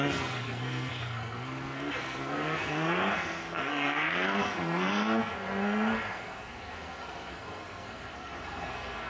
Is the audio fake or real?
fake